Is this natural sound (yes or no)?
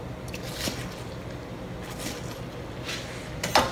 yes